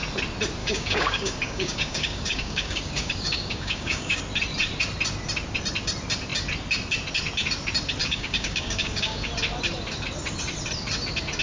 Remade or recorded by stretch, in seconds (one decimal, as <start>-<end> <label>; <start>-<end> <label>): 0.0-0.6 recorded; 0.6-4.2 remade; 4.2-8.0 recorded; 8.0-9.3 remade; 9.3-11.4 recorded